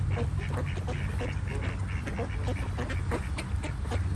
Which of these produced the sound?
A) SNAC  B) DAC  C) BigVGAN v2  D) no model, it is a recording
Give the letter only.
D